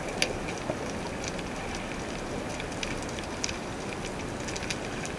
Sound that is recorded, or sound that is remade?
recorded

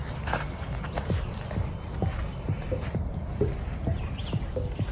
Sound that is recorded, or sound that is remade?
recorded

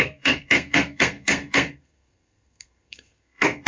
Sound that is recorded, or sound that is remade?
remade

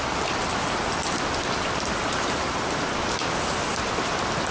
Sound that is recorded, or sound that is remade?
recorded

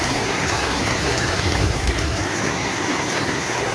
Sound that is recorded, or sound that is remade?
remade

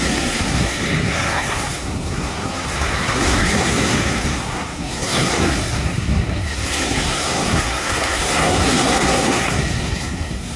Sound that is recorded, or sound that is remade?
remade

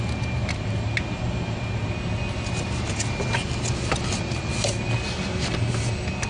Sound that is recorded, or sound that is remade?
recorded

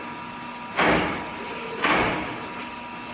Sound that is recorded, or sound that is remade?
recorded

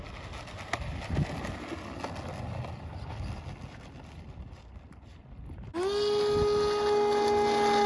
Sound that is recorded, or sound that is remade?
recorded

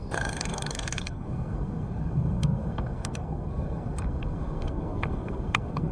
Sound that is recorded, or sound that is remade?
remade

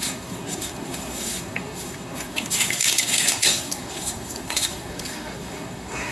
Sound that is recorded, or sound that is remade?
remade